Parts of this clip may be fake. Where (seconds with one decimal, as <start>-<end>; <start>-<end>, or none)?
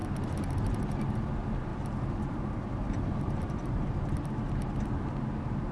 1.7-4.4